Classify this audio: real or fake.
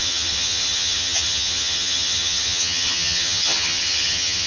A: fake